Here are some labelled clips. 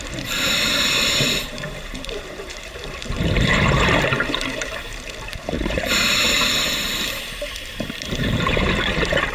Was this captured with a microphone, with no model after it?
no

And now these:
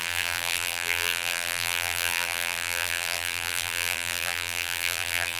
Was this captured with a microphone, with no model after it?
no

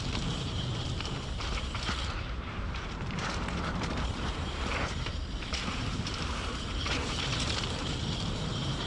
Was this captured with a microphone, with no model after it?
no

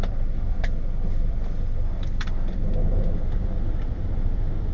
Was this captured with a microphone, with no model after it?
no